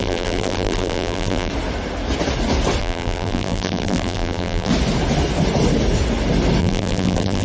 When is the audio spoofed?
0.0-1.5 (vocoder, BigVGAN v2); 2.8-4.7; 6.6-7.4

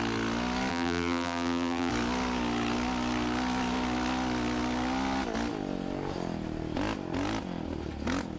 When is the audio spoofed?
0.7-1.9 (vocoder, BigVGAN v2)

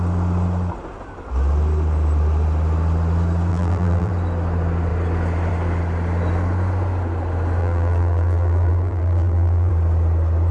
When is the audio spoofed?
3.5-4.1 (vocoder, BigVGAN v2); 7.6-9.7